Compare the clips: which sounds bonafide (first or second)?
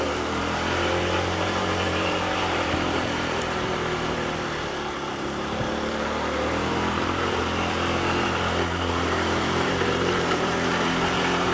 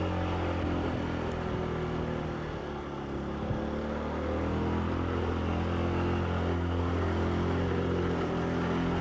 second